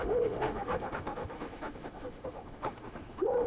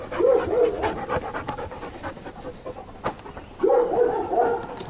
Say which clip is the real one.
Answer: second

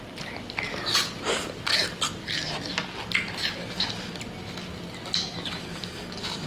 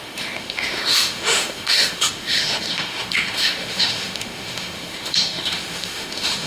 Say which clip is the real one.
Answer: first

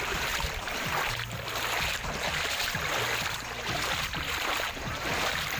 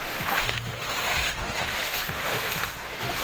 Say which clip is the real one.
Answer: first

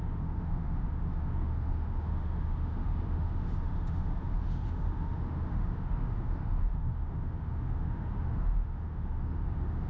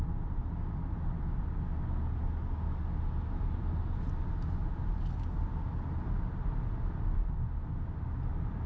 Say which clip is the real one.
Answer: second